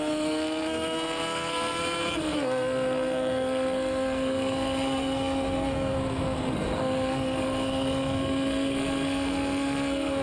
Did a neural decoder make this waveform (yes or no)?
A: yes